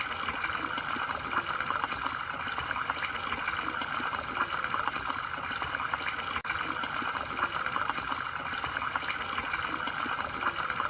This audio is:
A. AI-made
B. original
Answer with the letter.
B